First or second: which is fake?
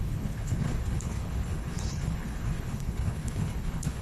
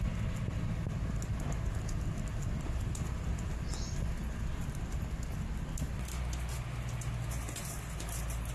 first